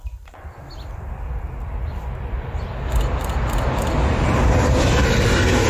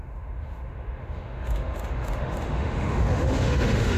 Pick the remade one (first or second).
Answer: second